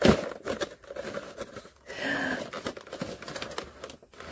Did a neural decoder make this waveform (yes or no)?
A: no